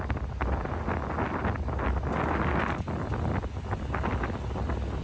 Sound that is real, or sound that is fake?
real